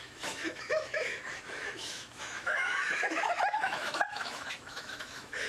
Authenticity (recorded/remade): remade